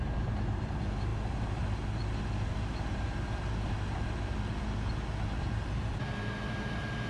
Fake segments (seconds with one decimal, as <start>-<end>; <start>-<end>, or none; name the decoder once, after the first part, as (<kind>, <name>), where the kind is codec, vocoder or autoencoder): 0.0-1.1 (vocoder, BigVGAN v2); 5.4-7.1

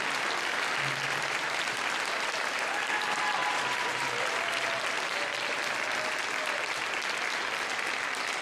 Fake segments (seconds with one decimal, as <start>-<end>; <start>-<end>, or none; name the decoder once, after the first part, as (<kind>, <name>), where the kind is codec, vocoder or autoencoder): 3.4-4.4 (vocoder, BigVGAN v2)

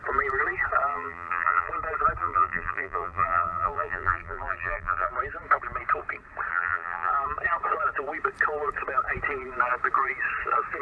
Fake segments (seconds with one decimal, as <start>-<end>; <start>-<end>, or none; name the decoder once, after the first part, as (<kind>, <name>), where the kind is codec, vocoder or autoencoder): 0.9-1.7 (vocoder, BigVGAN v2); 2.2-5.1; 6.5-7.1

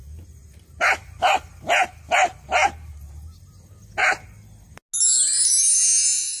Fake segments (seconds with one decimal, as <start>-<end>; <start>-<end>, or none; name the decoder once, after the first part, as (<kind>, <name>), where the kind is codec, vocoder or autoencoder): none

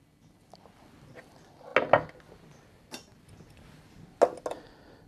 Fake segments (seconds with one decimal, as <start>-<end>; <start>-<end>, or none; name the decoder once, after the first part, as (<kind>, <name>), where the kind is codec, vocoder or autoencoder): 0.0-1.7 (vocoder, BigVGAN v2); 4.5-5.1

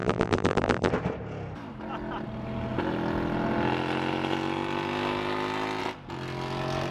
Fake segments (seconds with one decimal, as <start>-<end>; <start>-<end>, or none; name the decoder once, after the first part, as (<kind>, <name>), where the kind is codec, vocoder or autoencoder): 0.0-0.9 (vocoder, BigVGAN v2)

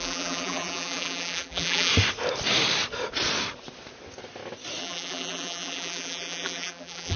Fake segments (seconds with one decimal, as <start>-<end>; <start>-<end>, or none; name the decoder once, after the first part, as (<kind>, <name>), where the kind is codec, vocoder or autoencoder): 0.0-1.9 (vocoder, BigVGAN v2); 4.8-7.2

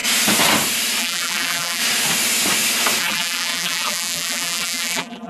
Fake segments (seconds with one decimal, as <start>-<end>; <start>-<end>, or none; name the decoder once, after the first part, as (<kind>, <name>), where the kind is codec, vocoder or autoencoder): 1.0-1.8 (vocoder, BigVGAN v2); 3.0-5.3